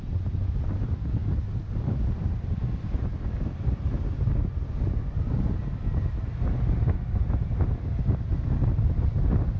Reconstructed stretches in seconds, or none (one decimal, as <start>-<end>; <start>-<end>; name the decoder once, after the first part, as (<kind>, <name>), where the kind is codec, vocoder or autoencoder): none

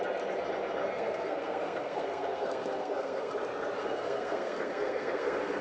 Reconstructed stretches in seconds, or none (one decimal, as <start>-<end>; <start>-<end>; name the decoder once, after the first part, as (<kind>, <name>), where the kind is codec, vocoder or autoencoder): 0.8-3.3 (codec, SNAC); 3.8-5.6

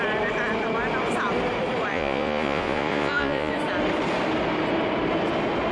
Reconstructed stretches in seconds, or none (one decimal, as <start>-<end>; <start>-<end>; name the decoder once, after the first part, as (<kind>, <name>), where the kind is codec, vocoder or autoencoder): 1.9-3.5 (vocoder, Vocos)

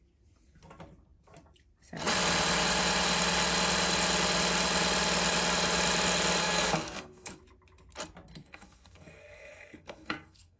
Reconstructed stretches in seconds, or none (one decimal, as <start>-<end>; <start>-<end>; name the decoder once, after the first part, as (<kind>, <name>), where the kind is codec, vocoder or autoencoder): 6.4-7.4 (codec, SNAC); 8.4-10.6